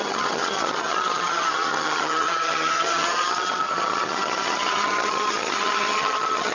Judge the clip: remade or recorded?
remade